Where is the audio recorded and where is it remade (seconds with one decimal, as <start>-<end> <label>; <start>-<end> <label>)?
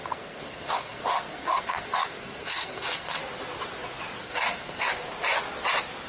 0.0-3.2 remade; 3.2-4.2 recorded; 4.2-4.9 remade; 4.9-6.1 recorded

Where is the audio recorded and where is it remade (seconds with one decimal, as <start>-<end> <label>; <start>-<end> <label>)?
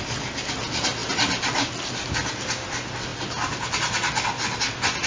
0.0-5.1 recorded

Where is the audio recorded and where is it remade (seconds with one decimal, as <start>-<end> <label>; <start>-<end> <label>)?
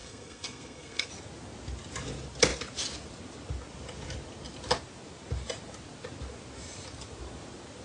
0.0-1.1 remade; 1.1-7.8 recorded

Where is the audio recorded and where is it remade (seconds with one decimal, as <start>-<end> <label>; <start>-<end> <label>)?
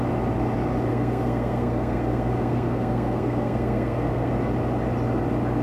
0.0-0.9 recorded; 0.9-4.3 remade; 4.3-5.6 recorded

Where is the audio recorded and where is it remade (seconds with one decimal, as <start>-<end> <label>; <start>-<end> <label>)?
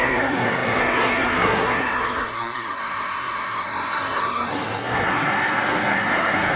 0.0-6.6 remade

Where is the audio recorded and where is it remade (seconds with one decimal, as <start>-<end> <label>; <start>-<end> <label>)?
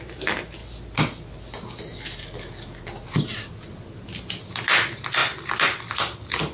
0.0-6.5 recorded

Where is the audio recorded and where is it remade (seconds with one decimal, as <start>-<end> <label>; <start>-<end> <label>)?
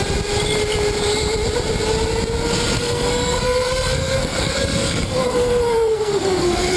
0.0-2.8 recorded; 2.8-6.8 remade